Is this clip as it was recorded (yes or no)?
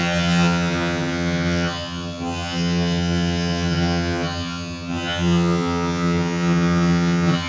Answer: no